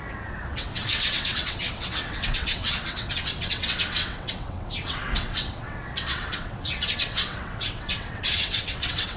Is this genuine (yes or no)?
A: no